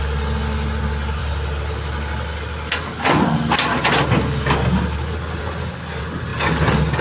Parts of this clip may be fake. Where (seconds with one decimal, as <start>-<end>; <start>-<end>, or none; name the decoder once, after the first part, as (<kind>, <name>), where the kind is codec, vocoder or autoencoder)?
none